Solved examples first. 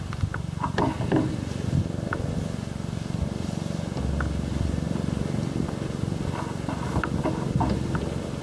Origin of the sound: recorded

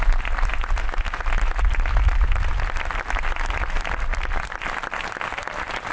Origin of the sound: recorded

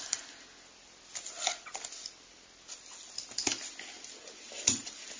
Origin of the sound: recorded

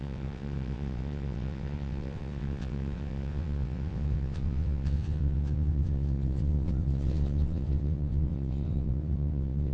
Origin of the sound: remade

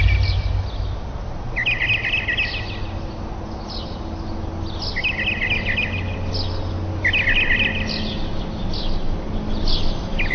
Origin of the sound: recorded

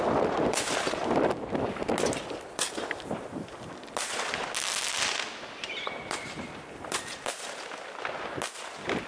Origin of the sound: recorded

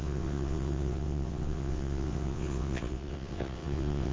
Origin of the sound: remade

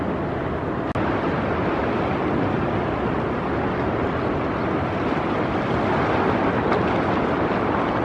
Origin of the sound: recorded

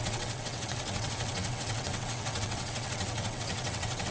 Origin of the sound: remade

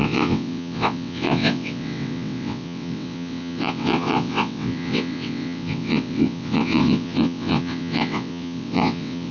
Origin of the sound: remade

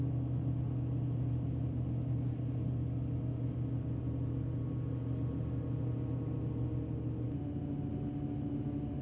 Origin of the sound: recorded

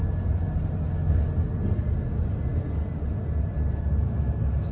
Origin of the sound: recorded